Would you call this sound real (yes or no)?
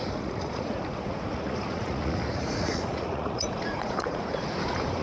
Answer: no